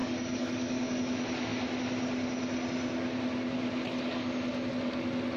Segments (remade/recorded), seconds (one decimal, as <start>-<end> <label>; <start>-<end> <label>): 0.0-1.0 remade; 1.0-5.4 recorded